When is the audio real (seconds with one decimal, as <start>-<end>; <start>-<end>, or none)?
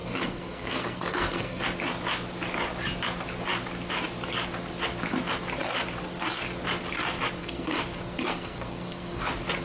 1.6-7.4; 9.2-9.6